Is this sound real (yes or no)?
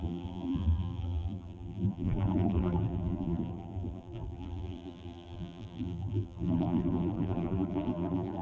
no